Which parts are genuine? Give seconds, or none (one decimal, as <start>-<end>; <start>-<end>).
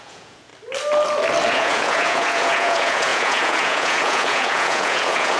0.5-1.5